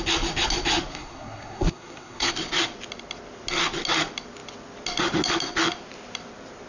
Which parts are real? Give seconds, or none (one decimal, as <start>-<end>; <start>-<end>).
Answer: 0.0-0.9; 2.3-6.7

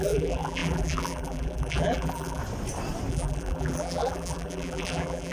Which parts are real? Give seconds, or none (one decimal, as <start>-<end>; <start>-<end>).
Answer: 2.4-3.1